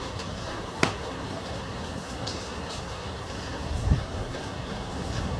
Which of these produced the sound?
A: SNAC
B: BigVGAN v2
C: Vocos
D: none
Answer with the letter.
A